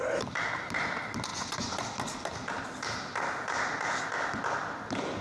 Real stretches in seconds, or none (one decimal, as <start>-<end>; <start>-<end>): 0.0-1.3; 1.8-5.2